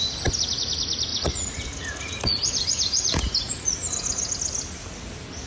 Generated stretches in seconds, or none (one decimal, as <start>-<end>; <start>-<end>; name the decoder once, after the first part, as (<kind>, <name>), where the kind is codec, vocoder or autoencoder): 1.1-4.3 (vocoder, Vocos)